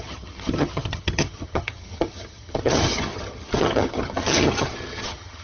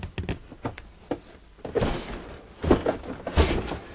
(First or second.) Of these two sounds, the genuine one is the second